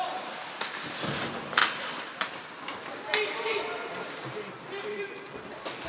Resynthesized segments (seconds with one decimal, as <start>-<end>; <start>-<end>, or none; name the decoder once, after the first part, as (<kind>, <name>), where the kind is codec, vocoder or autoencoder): 1.6-5.1 (vocoder, BigVGAN v2)